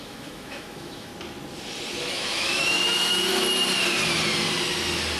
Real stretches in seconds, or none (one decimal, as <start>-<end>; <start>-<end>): 1.1-2.0; 3.3-5.2